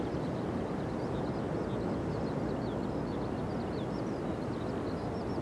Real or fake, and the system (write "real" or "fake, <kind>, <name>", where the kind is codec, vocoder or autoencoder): real